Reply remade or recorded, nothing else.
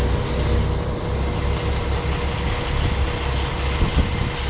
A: recorded